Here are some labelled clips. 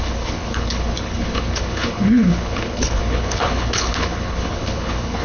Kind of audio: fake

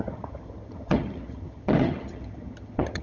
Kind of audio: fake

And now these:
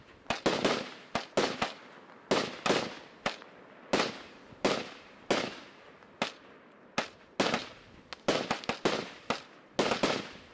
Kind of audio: real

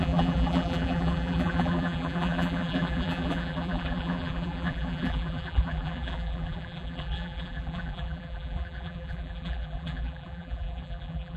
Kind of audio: fake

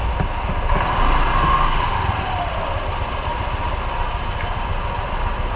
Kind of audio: real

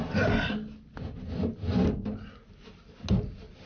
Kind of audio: real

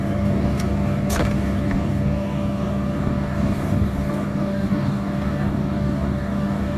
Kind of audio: fake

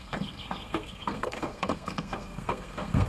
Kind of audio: fake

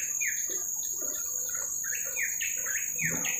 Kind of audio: real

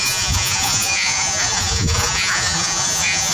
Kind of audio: fake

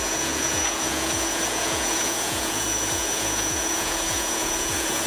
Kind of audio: fake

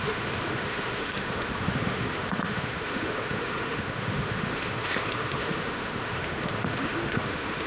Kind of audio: fake